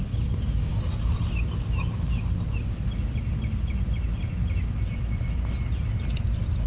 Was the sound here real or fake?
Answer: real